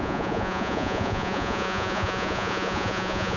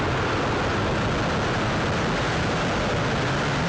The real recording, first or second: second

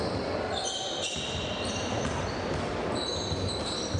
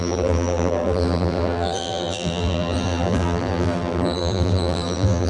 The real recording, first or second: first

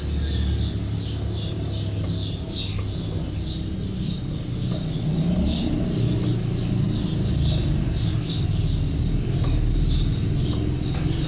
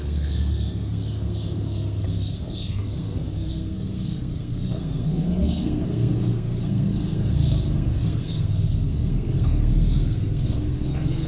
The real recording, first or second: first